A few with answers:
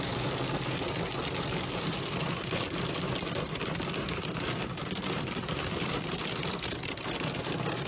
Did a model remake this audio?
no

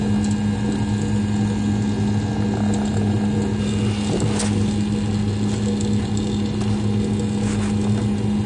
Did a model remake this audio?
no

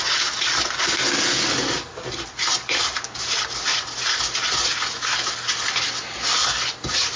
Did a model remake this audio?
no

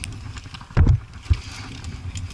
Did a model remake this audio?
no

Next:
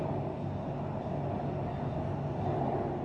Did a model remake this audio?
no